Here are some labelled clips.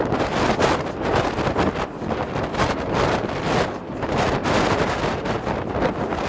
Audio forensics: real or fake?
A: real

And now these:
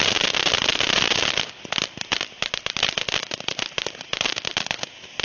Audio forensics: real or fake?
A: real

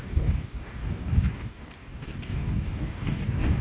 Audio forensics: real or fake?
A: fake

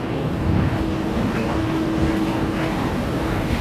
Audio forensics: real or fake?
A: fake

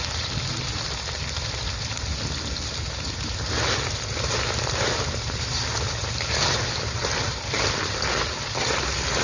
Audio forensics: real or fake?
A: real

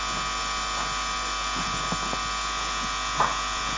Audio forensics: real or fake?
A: real